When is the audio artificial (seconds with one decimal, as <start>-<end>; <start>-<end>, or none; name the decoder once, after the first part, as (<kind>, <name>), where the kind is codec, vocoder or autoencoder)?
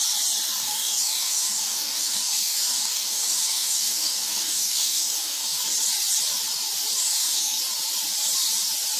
0.6-5.6 (codec, DAC); 7.0-7.6